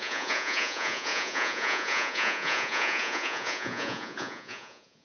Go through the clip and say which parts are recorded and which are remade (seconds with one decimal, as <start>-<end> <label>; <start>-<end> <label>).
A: 0.0-5.0 remade